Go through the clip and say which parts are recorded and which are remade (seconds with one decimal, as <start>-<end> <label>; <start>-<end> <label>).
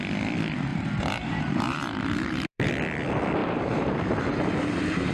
0.0-0.7 recorded; 0.7-2.7 remade; 2.7-3.4 recorded; 3.4-5.1 remade